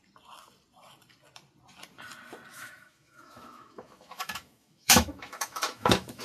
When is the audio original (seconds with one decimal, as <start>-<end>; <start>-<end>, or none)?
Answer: 0.0-2.5